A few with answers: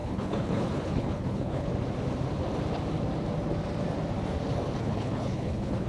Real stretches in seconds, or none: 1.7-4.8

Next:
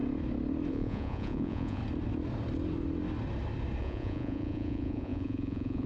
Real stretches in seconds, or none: 0.0-0.7; 1.8-3.8

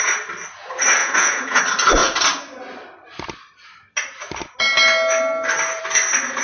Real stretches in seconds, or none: 0.0-1.0; 1.6-6.4